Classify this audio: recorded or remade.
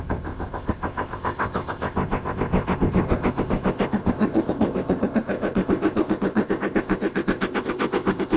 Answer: remade